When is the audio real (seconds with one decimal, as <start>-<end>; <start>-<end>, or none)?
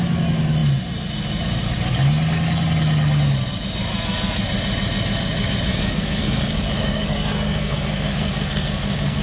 0.0-5.7